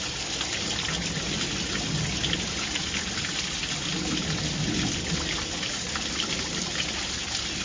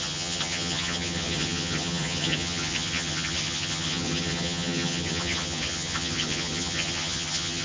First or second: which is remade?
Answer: second